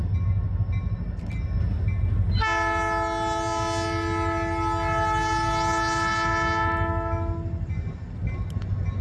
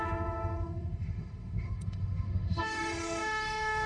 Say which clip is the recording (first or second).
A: first